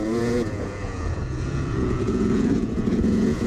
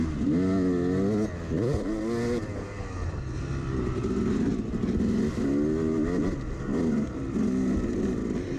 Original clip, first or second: second